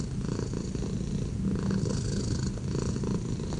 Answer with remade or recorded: recorded